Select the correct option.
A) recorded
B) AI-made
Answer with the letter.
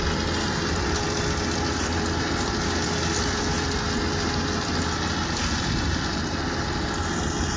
A